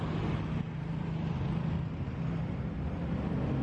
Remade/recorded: recorded